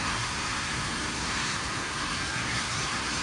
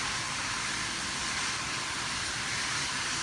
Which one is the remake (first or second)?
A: first